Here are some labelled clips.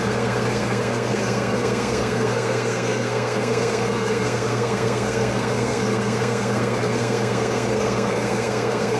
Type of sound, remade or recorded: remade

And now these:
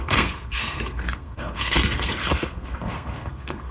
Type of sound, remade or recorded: remade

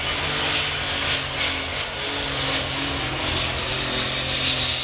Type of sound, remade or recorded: recorded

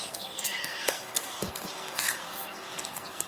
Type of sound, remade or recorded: remade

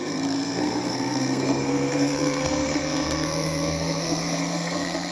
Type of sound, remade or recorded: remade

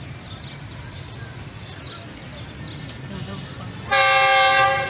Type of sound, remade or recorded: recorded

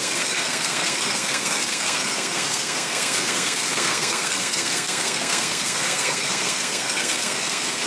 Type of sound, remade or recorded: remade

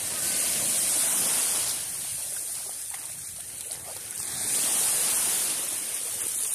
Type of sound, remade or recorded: recorded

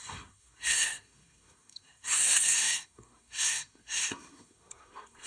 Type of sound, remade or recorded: remade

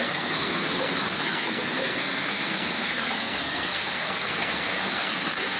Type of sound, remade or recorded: remade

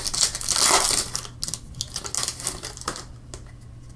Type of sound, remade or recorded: recorded